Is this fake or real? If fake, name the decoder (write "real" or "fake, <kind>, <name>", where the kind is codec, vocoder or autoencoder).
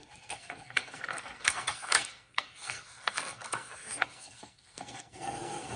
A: fake, codec, SNAC